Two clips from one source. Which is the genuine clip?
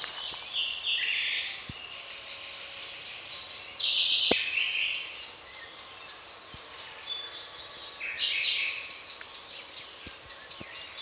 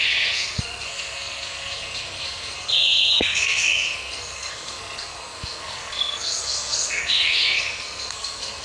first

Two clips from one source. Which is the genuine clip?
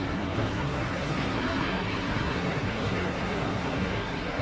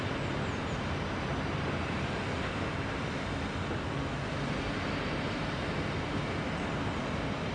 second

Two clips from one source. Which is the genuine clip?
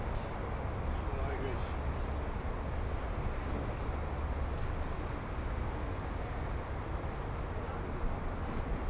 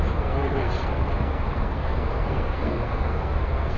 first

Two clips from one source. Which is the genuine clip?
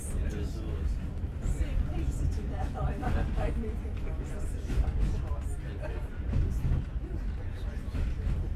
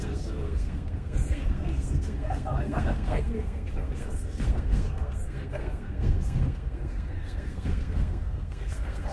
first